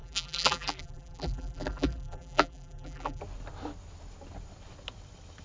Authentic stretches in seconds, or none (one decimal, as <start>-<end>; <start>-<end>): 3.2-5.4